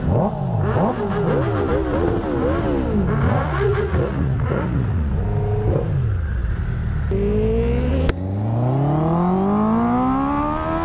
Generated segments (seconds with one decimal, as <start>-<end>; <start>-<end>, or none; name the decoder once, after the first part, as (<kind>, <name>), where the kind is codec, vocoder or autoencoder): 3.4-5.1 (vocoder, Vocos)

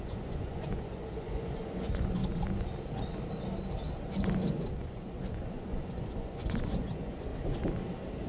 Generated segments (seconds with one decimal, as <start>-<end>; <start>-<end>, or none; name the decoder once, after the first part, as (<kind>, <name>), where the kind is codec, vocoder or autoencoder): 0.0-2.2 (vocoder, Vocos); 4.4-7.3

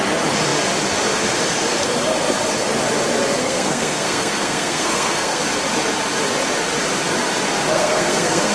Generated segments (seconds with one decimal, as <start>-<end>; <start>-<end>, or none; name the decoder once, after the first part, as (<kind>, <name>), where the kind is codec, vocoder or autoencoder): 3.4-5.4 (codec, SNAC); 7.7-8.5

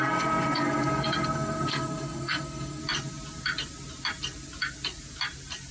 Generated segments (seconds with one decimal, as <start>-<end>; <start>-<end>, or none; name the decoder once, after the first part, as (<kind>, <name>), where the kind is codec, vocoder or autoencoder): 0.0-2.8 (codec, SNAC)

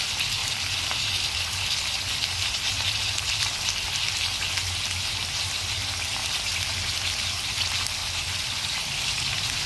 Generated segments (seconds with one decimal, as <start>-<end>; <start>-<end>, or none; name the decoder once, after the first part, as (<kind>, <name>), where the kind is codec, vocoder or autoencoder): 6.2-7.1 (vocoder, BigVGAN v2); 8.0-9.7

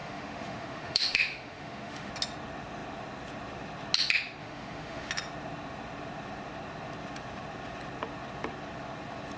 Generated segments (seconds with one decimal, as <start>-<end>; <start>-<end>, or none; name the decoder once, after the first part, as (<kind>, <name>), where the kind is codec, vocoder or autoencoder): 0.0-2.1 (autoencoder, DAC-VAE); 4.4-5.1

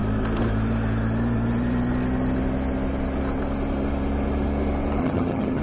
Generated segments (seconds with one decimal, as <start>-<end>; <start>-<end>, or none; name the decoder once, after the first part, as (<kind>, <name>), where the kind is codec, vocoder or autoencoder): 5.0-5.6 (vocoder, HiFi-GAN)

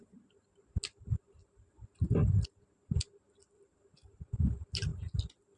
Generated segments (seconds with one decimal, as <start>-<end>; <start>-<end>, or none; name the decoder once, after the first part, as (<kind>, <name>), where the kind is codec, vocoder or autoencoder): none